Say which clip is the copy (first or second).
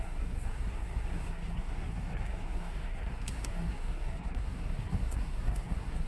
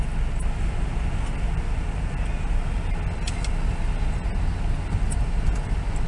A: first